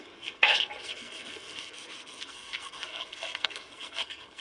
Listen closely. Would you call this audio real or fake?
fake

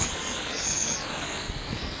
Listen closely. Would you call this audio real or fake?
fake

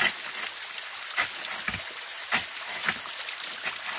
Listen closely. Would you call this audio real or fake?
real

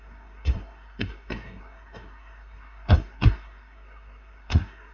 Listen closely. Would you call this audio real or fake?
fake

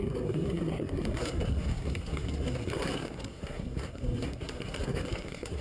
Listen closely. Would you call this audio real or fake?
fake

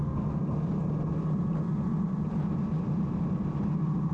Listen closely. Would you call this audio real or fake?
real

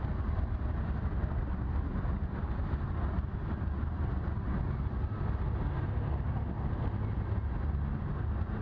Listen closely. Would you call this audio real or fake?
real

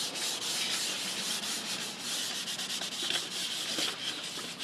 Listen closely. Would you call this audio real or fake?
real